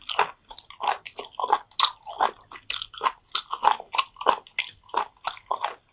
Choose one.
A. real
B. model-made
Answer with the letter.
A